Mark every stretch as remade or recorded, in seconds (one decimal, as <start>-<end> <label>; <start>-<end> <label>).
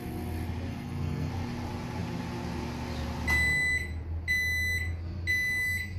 0.0-0.7 recorded; 0.7-1.3 remade; 1.3-6.0 recorded